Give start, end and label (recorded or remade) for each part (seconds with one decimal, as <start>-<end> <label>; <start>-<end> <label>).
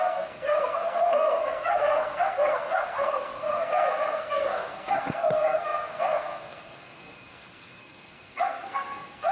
0.0-9.3 remade